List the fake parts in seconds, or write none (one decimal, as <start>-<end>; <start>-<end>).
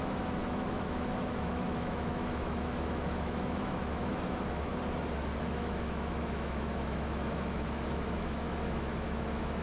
0.0-4.7; 5.4-9.6